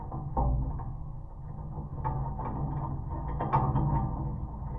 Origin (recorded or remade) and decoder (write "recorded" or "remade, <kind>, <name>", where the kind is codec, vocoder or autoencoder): recorded